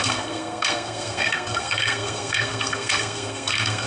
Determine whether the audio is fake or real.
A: fake